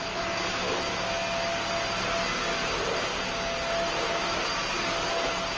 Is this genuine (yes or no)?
yes